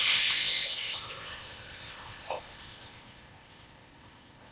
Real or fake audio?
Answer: fake